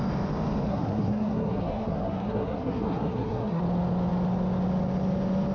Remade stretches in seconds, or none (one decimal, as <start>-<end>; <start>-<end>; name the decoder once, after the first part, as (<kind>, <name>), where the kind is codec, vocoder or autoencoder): 0.7-3.6 (codec, SNAC)

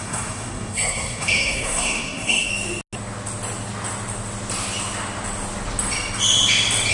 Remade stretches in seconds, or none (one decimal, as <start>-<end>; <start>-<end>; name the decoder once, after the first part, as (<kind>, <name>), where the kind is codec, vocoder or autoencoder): 0.0-2.5 (codec, SNAC)